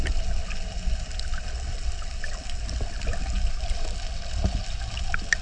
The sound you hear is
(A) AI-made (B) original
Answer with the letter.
B